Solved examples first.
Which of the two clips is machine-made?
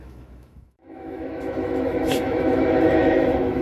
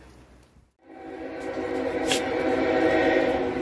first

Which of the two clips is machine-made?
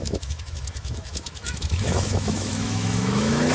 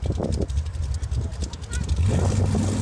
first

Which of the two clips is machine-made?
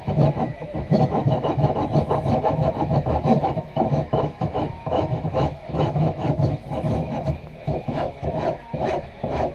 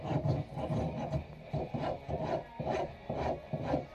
first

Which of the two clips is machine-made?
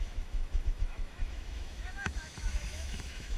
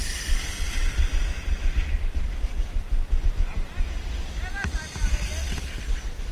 first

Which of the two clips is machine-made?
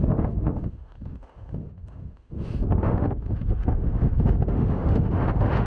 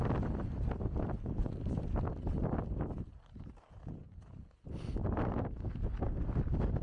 first